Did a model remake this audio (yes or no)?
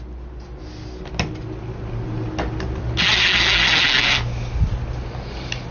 no